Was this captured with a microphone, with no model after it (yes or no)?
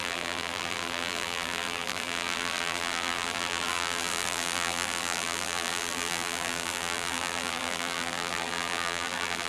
no